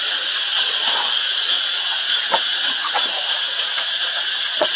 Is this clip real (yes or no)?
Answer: no